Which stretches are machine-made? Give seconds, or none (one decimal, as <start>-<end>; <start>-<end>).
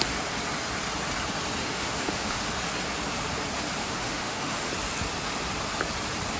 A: 1.6-2.4; 3.8-4.7